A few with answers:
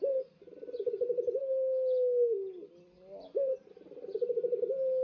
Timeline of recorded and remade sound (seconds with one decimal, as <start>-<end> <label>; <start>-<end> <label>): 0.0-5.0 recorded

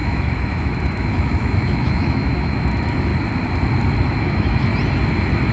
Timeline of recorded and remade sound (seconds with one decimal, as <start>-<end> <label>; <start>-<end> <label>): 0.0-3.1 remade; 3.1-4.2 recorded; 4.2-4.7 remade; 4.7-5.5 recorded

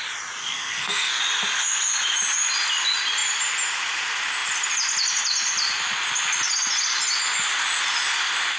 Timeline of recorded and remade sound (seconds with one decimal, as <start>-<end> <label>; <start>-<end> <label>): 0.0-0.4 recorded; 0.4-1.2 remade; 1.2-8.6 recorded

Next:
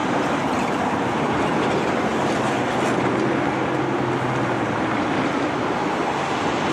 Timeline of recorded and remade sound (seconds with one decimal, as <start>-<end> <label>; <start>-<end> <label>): 0.0-1.4 remade; 1.4-2.1 recorded; 2.1-2.7 remade; 2.7-6.7 recorded